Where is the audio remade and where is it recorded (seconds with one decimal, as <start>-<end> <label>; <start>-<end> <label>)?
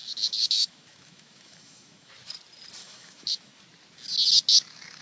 0.0-2.1 remade; 2.1-2.8 recorded; 2.8-3.6 remade; 3.6-5.0 recorded